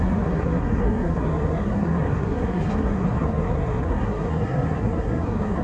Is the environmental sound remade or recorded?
remade